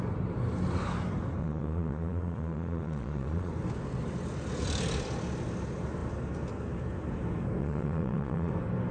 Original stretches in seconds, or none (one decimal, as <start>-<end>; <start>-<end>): 0.0-1.4; 3.5-7.6; 8.5-8.9